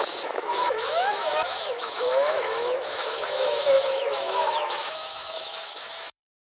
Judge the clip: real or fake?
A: fake